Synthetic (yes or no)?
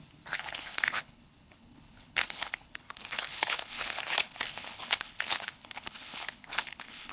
yes